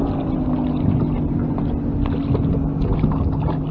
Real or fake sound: real